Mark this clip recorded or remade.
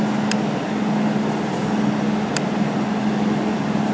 recorded